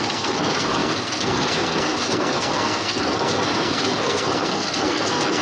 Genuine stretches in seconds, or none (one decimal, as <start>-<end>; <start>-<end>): none